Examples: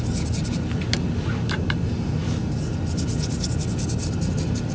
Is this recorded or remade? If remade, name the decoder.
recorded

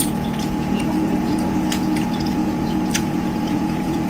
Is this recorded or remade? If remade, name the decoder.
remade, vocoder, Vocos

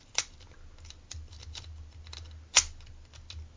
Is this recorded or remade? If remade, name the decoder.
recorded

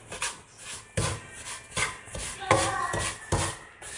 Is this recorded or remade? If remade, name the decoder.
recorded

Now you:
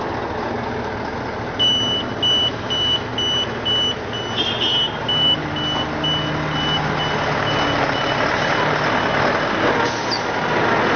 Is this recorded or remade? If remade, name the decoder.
recorded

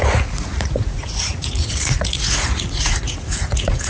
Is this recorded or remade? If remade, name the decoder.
remade, vocoder, Vocos